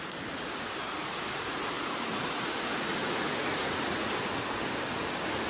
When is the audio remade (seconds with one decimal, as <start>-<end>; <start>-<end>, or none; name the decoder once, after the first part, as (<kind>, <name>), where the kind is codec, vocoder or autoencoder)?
0.8-4.1 (vocoder, Vocos)